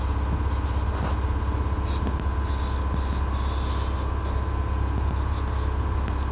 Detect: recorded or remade recorded